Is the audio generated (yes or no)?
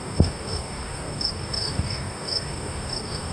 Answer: yes